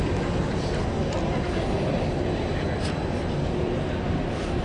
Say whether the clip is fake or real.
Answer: real